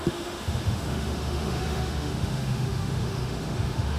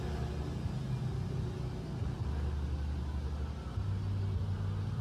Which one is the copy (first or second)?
first